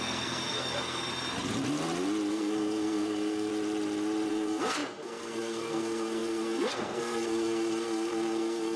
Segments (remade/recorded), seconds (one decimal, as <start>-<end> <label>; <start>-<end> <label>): 0.0-1.1 remade; 1.1-2.3 recorded; 2.3-3.5 remade; 3.5-4.3 recorded; 4.3-8.8 remade